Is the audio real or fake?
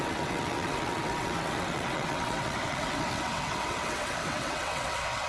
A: fake